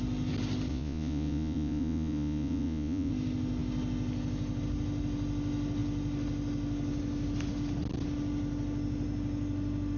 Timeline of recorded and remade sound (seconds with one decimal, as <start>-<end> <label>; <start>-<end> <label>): 0.0-0.7 recorded; 0.7-3.1 remade; 3.1-10.0 recorded